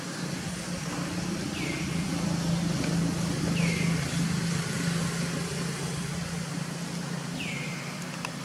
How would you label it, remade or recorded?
recorded